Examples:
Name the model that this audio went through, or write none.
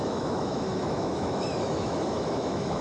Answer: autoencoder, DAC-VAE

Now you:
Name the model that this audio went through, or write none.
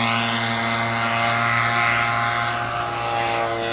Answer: none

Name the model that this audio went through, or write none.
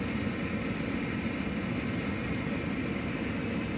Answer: none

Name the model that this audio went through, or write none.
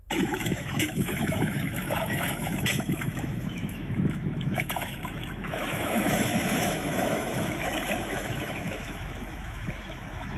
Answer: autoencoder, DAC-VAE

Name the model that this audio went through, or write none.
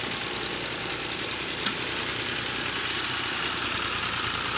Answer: none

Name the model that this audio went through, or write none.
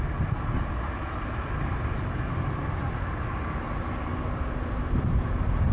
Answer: none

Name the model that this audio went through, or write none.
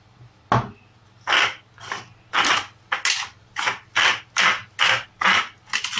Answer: none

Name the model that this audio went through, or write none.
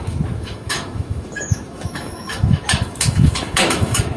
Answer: autoencoder, DAC-VAE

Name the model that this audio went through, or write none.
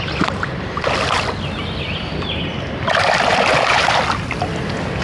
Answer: none